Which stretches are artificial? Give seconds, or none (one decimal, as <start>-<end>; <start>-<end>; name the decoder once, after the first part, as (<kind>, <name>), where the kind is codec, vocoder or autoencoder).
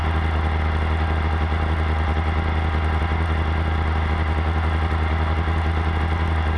none